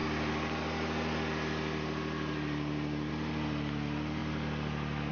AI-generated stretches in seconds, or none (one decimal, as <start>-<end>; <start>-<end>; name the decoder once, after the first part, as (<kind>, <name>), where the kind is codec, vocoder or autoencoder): none